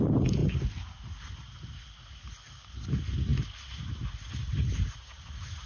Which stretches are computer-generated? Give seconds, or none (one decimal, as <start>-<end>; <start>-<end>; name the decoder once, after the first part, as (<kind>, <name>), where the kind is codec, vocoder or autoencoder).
none